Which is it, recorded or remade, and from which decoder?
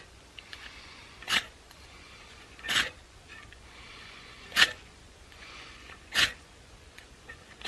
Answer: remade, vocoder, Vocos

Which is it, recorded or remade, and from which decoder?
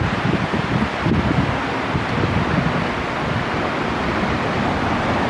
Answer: recorded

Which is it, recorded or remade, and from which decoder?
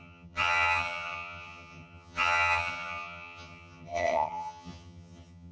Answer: remade, vocoder, HiFi-GAN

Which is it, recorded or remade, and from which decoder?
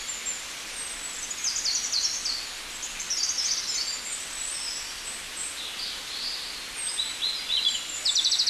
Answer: recorded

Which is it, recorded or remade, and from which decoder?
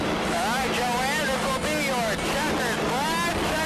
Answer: recorded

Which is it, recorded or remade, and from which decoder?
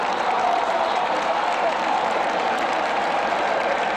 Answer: remade, vocoder, BigVGAN v2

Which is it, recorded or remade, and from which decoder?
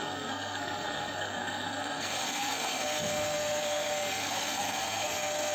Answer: remade, codec, SNAC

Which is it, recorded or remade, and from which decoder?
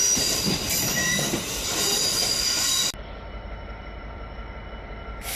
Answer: recorded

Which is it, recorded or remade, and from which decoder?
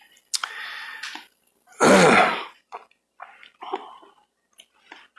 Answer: recorded